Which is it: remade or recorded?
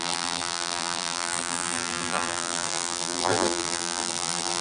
remade